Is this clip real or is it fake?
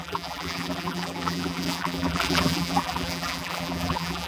fake